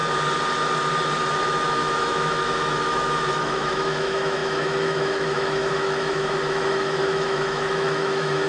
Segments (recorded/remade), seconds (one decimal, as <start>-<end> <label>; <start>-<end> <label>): 0.0-1.3 recorded; 1.3-8.5 remade